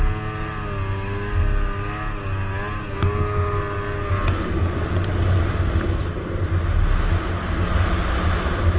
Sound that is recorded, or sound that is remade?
recorded